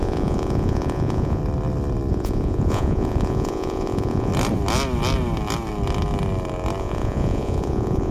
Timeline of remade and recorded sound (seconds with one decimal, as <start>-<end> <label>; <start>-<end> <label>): 0.0-1.4 remade; 1.4-2.1 recorded; 2.1-4.3 remade; 4.3-6.8 recorded; 6.8-8.1 remade

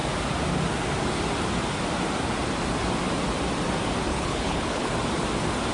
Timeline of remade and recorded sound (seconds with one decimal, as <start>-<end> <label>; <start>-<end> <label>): 0.0-4.1 recorded; 4.1-4.9 remade; 4.9-5.7 recorded